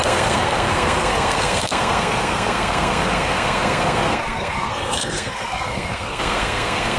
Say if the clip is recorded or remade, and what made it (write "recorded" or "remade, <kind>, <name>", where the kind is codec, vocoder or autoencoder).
remade, codec, SNAC